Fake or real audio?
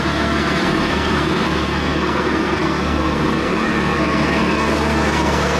fake